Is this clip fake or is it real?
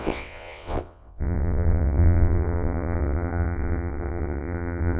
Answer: fake